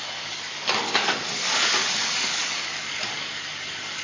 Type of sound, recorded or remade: remade